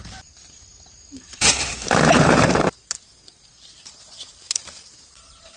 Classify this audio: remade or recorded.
remade